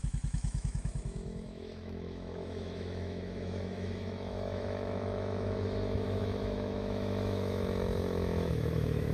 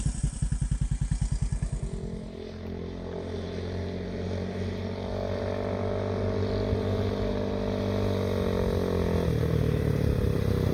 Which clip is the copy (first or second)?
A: first